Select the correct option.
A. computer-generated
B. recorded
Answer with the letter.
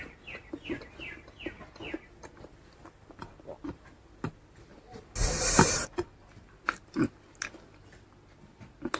B